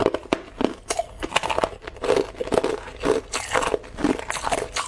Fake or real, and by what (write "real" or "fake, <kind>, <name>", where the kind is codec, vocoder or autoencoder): real